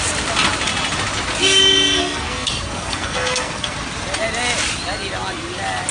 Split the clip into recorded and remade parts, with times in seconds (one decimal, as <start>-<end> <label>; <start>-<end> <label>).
0.0-2.0 recorded; 2.0-3.8 remade; 3.8-5.9 recorded